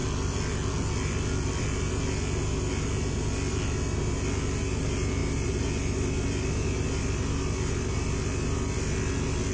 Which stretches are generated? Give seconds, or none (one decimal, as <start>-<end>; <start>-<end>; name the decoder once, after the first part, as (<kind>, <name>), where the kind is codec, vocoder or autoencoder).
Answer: none